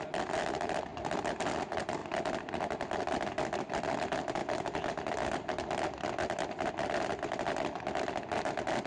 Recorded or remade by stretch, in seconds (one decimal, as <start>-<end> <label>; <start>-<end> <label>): 0.0-0.9 recorded; 0.9-1.5 remade; 1.5-8.9 recorded